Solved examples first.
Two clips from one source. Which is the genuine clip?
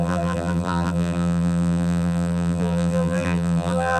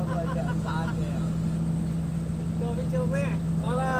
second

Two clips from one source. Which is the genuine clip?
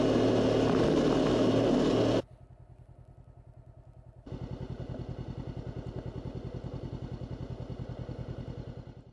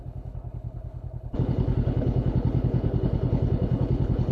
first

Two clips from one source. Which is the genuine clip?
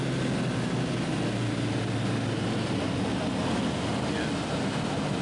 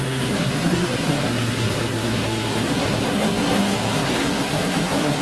first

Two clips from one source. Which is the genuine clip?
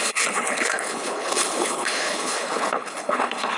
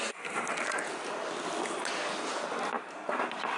second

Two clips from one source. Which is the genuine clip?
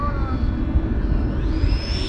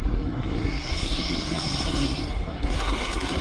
first